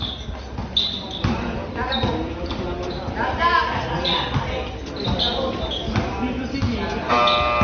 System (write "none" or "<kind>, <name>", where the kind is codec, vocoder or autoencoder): none